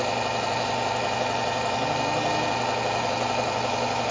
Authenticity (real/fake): real